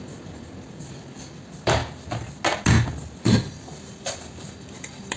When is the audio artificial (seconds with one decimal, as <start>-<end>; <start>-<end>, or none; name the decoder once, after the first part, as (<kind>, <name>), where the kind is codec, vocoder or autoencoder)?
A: 0.0-1.8 (vocoder, BigVGAN v2); 2.9-5.2